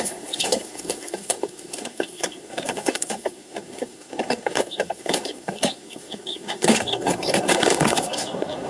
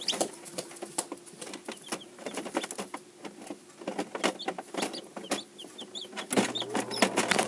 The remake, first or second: first